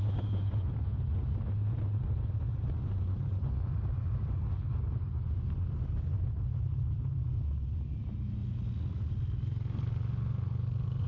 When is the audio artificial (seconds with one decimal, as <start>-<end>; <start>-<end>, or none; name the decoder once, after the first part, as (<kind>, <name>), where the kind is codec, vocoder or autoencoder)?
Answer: 0.0-8.4 (vocoder, BigVGAN v2)